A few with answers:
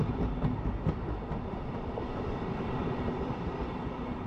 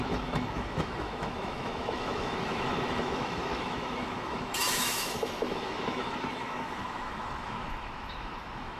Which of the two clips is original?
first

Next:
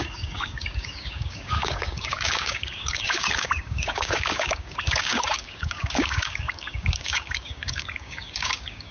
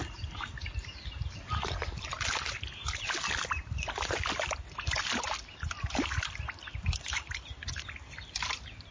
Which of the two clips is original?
second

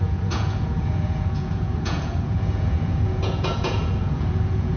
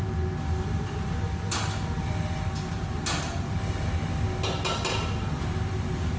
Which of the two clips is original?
second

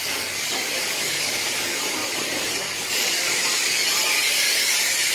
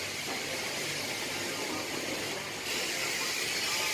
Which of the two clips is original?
second